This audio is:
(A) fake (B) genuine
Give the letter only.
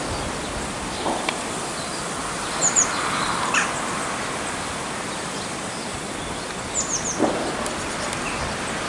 B